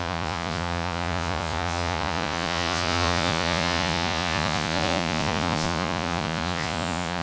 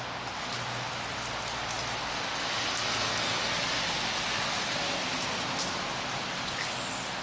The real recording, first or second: second